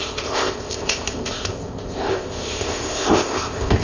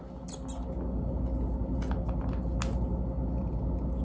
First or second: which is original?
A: second